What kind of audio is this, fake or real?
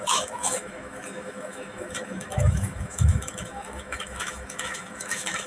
fake